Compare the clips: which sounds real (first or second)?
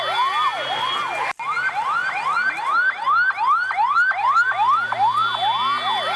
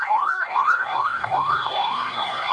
first